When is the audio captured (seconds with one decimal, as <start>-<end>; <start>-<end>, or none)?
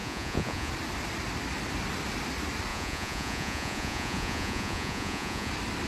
0.7-2.7; 5.5-5.9